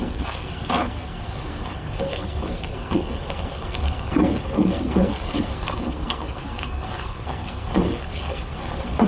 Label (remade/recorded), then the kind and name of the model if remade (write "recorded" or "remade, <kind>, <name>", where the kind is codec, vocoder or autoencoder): remade, codec, SNAC